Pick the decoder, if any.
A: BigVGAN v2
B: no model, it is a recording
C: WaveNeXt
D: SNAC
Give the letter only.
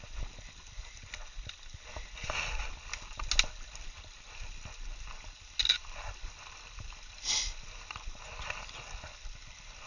B